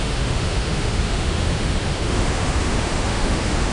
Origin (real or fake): fake